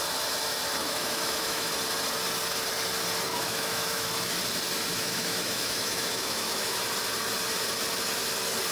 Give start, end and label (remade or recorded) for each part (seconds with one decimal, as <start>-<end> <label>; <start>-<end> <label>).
0.0-0.8 recorded; 0.8-1.7 remade; 1.7-3.3 recorded; 3.3-4.1 remade; 4.1-4.9 recorded; 4.9-6.8 remade; 6.8-8.7 recorded